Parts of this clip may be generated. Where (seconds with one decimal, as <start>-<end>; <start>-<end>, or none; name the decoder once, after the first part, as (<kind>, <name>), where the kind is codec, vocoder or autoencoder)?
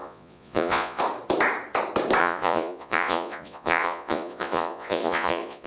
0.0-1.0 (vocoder, Vocos); 2.2-5.7